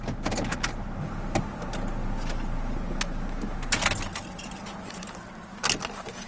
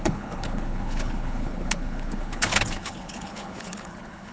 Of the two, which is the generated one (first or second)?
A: second